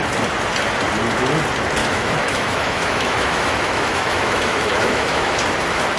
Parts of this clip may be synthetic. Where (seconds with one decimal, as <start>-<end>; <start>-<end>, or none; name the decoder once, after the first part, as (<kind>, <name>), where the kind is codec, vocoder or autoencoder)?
1.8-5.4 (autoencoder, DAC-VAE)